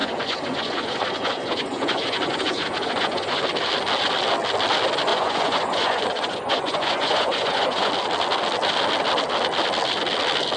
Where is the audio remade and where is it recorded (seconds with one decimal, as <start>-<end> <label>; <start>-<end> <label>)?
0.0-3.4 remade; 3.4-5.1 recorded; 5.1-7.9 remade; 7.9-10.6 recorded